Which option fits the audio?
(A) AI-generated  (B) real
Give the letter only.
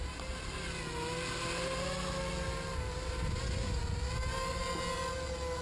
B